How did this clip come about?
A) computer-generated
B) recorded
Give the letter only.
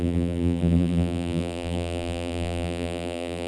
A